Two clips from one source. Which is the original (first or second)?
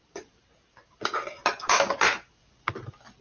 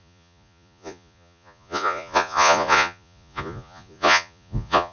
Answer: first